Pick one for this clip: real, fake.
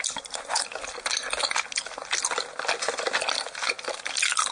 real